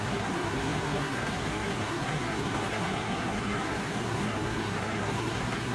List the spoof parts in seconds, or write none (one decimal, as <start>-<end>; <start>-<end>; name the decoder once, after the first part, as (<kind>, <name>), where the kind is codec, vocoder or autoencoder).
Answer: 0.0-5.7 (codec, SNAC)